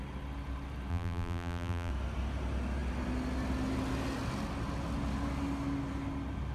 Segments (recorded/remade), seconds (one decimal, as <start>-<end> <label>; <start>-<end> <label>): 0.0-0.9 recorded; 0.9-1.9 remade; 1.9-6.5 recorded